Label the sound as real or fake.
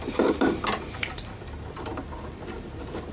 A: real